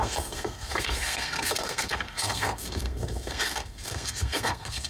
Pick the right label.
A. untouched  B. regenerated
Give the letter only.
B